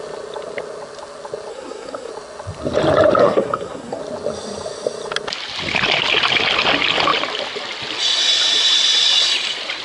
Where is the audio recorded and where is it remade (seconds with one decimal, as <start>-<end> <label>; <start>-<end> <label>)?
0.0-1.5 recorded; 1.5-2.1 remade; 2.1-3.2 recorded; 3.2-4.0 remade; 4.0-9.8 recorded